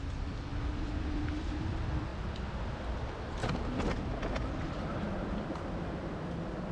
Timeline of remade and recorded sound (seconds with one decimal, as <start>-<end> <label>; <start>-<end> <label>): 0.0-0.5 remade; 0.5-1.3 recorded; 1.3-2.1 remade; 2.1-4.6 recorded; 4.6-6.7 remade